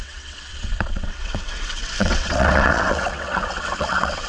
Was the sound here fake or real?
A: fake